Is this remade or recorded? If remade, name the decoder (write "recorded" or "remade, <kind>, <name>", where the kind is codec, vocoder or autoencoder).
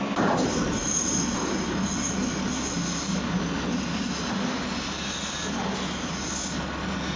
recorded